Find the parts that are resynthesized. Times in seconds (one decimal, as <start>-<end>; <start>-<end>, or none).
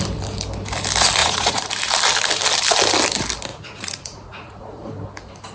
1.2-1.7; 3.5-4.9